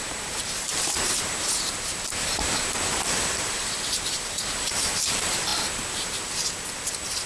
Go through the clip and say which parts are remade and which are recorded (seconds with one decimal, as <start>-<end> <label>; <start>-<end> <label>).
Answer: 0.0-7.3 remade

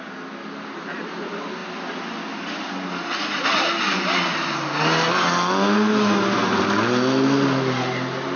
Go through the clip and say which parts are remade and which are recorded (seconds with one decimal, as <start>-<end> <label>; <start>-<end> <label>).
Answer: 0.0-8.4 recorded

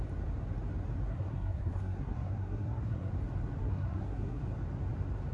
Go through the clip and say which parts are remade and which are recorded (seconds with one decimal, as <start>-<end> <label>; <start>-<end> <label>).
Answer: 0.0-1.1 recorded; 1.1-3.1 remade; 3.1-3.6 recorded; 3.6-4.4 remade; 4.4-5.3 recorded

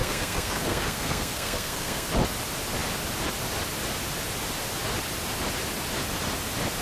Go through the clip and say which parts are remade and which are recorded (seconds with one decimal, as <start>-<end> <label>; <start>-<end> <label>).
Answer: 0.0-2.1 remade; 2.1-6.8 recorded

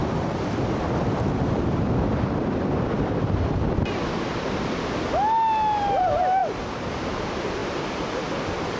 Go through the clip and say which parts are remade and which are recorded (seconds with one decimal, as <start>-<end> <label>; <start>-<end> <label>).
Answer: 0.0-8.8 recorded

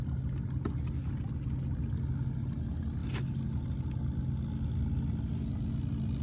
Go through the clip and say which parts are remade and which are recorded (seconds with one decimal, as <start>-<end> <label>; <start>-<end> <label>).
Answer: 0.0-6.2 recorded